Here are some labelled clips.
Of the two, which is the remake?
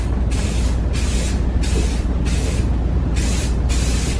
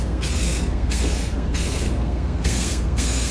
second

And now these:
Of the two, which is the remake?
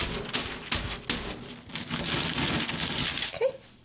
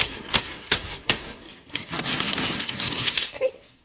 second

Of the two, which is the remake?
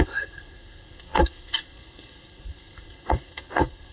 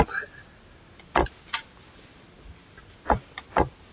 first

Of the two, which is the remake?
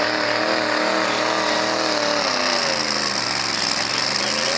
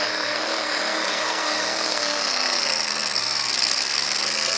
second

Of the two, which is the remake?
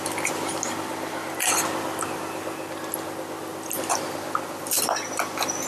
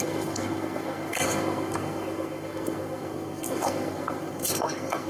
second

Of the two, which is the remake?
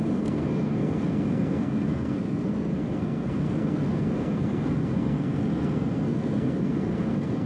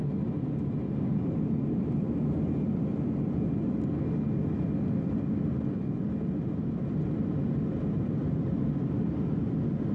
first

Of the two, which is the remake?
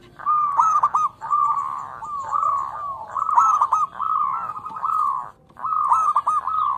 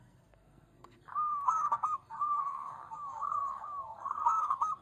second